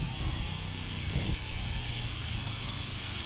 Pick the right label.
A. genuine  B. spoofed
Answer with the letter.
B